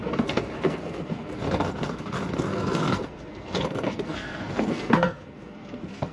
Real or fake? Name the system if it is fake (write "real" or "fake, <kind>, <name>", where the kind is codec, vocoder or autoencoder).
fake, codec, SNAC